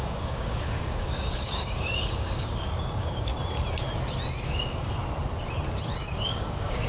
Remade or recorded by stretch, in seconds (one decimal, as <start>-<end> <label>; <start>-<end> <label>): 0.0-3.3 remade; 3.3-4.4 recorded; 4.4-5.0 remade; 5.0-5.9 recorded; 5.9-6.9 remade